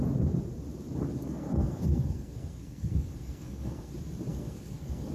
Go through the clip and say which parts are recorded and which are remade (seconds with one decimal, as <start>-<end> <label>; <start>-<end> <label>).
0.0-1.1 recorded; 1.1-3.9 remade; 3.9-4.3 recorded; 4.3-5.1 remade